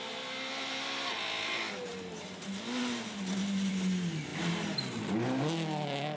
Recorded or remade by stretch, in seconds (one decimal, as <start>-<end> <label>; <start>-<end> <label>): 0.0-6.2 recorded